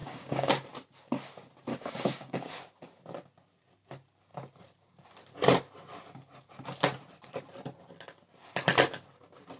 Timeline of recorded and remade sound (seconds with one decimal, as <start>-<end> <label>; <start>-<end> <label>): 0.0-0.5 remade; 0.5-1.7 recorded; 1.7-2.5 remade; 2.5-9.6 recorded